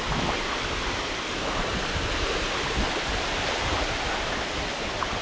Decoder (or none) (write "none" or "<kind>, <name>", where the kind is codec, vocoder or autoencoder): none